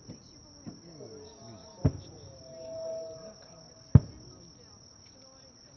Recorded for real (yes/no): yes